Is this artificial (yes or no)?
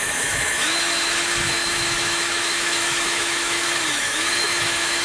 yes